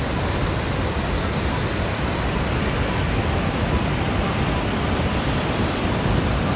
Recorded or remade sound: recorded